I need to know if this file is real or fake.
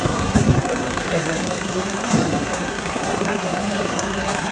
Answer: fake